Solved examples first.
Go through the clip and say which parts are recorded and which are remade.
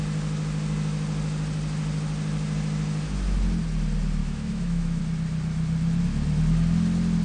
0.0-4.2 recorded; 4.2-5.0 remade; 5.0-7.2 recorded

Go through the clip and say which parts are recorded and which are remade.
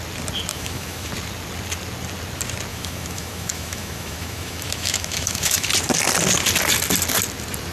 0.0-0.5 recorded; 0.5-1.1 remade; 1.1-2.7 recorded; 2.7-5.7 remade; 5.7-7.7 recorded